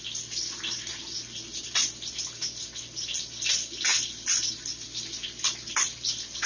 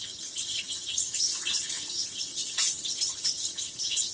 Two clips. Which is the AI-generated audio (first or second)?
second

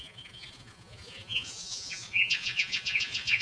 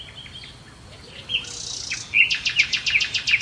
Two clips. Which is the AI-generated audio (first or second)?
first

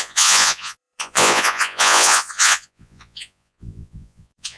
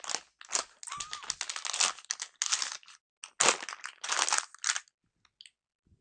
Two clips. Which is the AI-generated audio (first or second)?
first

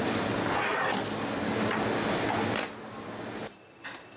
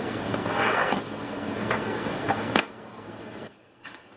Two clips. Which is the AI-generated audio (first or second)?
second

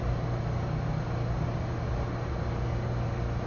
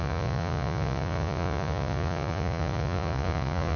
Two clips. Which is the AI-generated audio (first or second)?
second